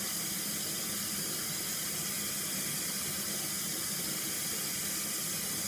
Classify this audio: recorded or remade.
recorded